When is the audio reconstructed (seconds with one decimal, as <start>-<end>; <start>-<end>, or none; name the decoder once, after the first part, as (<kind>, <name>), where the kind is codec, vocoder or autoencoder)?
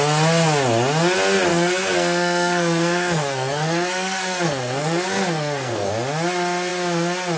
1.5-5.9 (codec, SNAC)